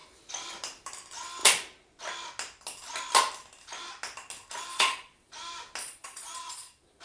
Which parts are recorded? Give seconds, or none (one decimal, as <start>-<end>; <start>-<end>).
0.0-4.7; 5.3-5.8